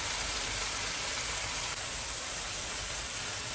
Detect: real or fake fake